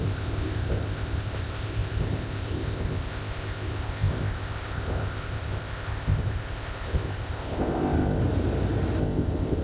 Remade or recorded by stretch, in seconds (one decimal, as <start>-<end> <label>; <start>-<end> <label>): 0.0-8.2 remade; 8.2-9.0 recorded; 9.0-9.6 remade